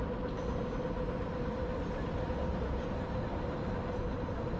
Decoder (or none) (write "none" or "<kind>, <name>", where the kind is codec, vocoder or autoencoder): none